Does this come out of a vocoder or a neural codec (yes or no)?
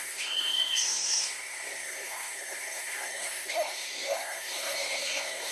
yes